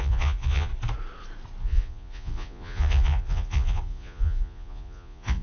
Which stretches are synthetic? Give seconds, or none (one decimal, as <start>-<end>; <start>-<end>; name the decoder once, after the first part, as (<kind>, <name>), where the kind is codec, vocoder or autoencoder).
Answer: 0.0-0.7 (vocoder, Vocos); 1.6-5.4